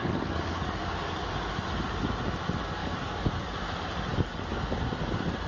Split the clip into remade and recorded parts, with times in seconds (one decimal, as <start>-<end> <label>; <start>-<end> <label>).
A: 0.0-1.3 remade; 1.3-2.8 recorded; 2.8-3.3 remade; 3.3-5.5 recorded